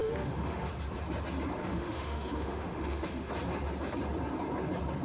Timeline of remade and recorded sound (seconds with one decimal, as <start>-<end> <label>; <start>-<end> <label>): 0.0-0.7 remade; 0.7-1.6 recorded; 1.6-3.3 remade; 3.3-5.0 recorded